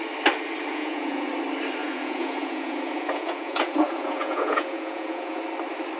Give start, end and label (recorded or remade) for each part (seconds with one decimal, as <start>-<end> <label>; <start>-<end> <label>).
0.0-0.7 recorded; 0.7-1.3 remade; 1.3-1.8 recorded; 1.8-5.4 remade; 5.4-6.0 recorded